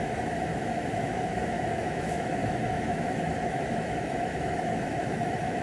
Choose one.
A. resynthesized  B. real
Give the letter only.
A